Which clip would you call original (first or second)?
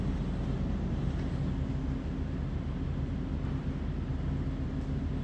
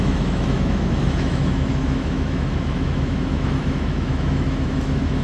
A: first